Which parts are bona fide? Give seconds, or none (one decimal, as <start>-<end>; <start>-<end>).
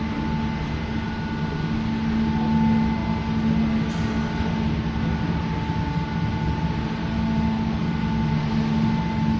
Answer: 0.0-9.4